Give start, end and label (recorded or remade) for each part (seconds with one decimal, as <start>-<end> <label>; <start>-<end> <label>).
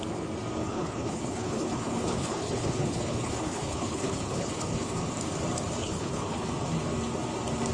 0.0-0.6 recorded; 0.6-5.1 remade; 5.1-5.8 recorded; 5.8-6.5 remade; 6.5-7.7 recorded